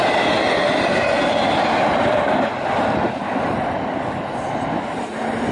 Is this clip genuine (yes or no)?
yes